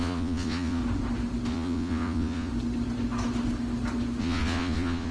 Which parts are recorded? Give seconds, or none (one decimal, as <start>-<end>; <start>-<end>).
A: 0.8-1.5; 2.5-4.2